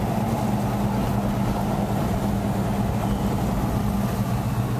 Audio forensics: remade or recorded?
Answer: recorded